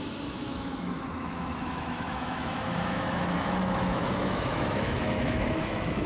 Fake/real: fake